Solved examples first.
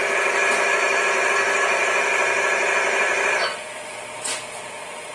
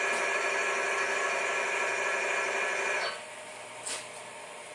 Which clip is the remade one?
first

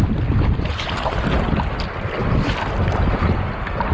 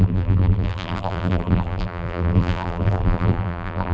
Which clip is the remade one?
second